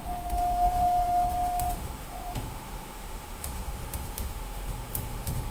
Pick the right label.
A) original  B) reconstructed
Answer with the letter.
B